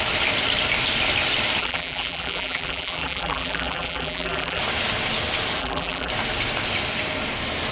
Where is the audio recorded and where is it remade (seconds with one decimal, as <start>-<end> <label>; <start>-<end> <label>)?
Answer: 0.0-1.6 recorded; 1.6-4.6 remade; 4.6-5.6 recorded; 5.6-6.1 remade; 6.1-7.7 recorded